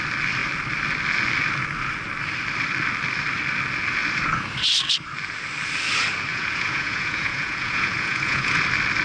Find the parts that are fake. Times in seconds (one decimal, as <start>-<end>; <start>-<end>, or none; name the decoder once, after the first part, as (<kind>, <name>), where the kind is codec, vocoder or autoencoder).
6.3-8.6 (vocoder, Vocos)